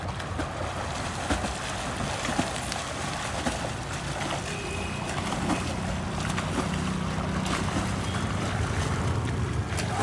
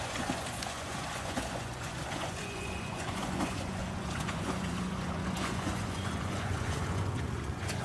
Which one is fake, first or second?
second